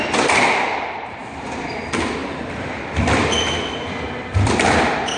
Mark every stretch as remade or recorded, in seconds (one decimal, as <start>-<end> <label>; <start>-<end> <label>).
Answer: 0.0-5.2 recorded